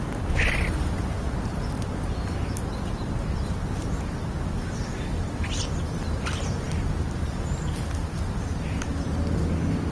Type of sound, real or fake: real